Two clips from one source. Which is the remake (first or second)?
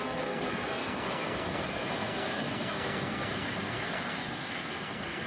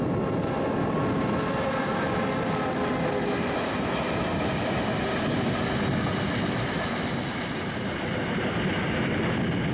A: first